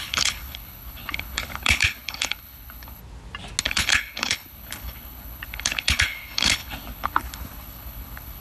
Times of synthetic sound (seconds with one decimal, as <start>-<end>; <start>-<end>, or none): 0.0-3.0; 3.6-8.4